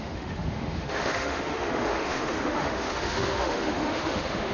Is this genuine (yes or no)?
no